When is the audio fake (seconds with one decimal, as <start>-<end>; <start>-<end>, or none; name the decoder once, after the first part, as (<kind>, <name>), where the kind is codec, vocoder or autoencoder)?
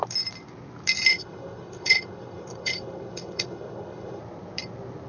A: 1.1-4.2 (codec, HILCodec)